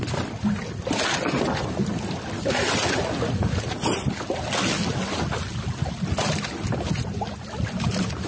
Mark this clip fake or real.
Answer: real